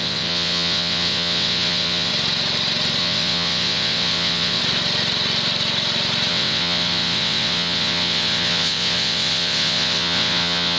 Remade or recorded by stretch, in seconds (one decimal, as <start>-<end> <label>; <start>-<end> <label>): 0.0-2.1 remade; 2.1-3.0 recorded; 3.0-4.6 remade; 4.6-6.3 recorded; 6.3-10.8 remade